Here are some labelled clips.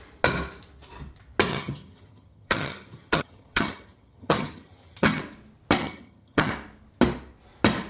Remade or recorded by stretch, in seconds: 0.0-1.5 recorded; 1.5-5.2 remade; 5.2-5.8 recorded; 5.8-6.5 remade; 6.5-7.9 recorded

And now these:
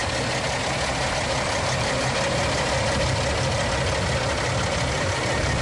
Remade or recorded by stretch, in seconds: 0.0-5.6 recorded

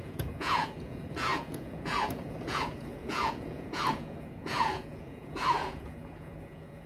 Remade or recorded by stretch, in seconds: 0.0-6.9 remade